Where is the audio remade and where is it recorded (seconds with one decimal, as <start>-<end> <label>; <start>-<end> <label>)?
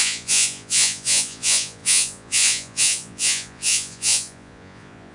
0.0-5.1 remade